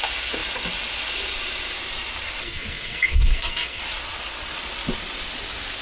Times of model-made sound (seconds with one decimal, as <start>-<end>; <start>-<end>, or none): 2.4-3.8